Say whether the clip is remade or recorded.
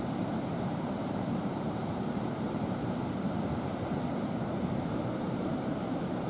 remade